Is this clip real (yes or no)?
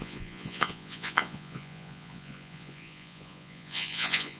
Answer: no